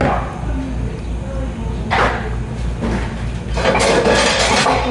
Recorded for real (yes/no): yes